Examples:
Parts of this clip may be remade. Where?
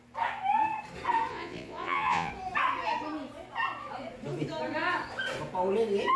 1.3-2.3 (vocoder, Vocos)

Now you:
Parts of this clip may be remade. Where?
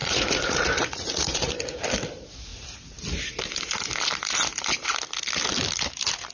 0.0-1.5 (vocoder, Vocos)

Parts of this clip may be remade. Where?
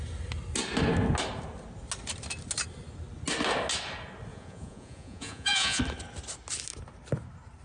4.3-5.8 (vocoder, Vocos)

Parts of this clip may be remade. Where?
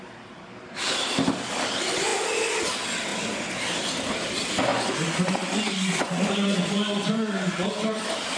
4.7-7.7 (vocoder, Vocos)